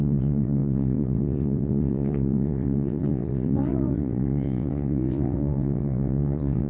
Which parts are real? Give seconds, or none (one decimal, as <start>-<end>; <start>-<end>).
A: none